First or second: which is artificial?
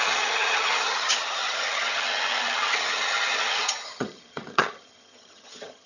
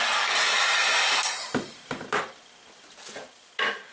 first